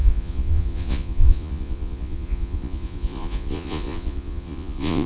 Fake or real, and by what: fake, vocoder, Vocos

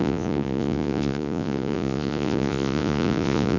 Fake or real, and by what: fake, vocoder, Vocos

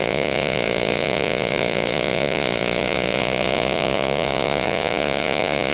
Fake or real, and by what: fake, vocoder, Vocos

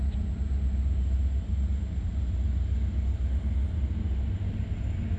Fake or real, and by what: real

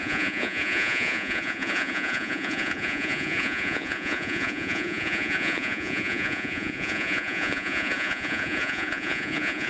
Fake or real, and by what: fake, vocoder, Vocos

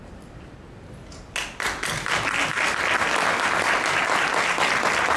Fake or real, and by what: real